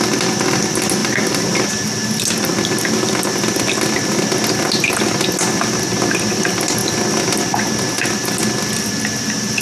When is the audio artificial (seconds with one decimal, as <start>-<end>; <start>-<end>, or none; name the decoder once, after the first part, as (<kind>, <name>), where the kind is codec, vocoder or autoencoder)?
none